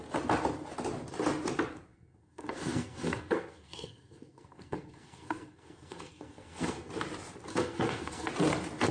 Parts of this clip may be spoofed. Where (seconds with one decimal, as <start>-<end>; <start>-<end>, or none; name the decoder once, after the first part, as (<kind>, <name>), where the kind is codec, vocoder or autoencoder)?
1.9-6.9 (codec, SNAC); 7.5-8.3